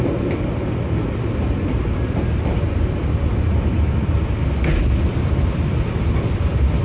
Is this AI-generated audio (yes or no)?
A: no